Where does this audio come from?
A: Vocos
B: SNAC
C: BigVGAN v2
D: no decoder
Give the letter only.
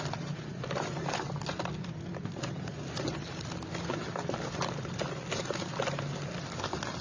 D